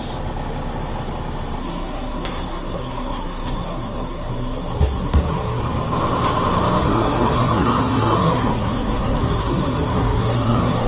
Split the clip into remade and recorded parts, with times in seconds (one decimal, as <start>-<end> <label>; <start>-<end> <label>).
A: 0.0-1.6 recorded; 1.6-5.6 remade; 5.6-6.8 recorded; 6.8-10.9 remade